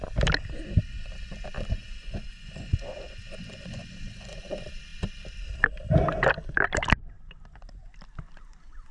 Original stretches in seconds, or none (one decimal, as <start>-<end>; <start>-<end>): 0.0-1.8; 4.4-8.9